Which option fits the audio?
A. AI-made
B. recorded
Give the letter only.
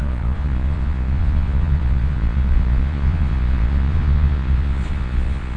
A